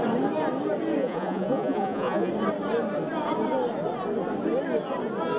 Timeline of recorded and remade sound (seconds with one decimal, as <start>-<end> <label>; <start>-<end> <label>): 0.0-1.0 recorded; 1.0-2.3 remade; 2.3-5.4 recorded

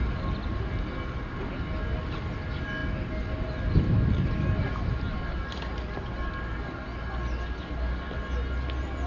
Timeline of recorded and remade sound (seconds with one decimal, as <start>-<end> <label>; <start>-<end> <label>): 0.0-9.1 recorded